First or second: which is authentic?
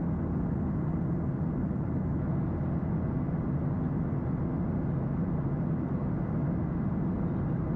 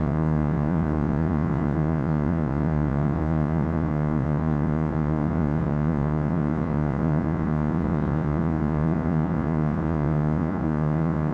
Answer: first